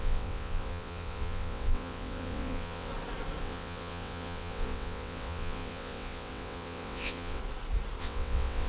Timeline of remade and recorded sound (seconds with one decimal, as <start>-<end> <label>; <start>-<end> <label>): 0.0-2.9 remade; 2.9-3.4 recorded; 3.4-7.4 remade; 7.4-8.0 recorded; 8.0-8.7 remade